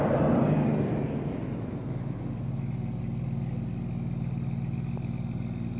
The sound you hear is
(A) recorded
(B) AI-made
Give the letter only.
A